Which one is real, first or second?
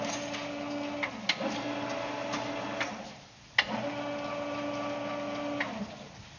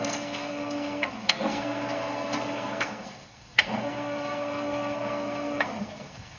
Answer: first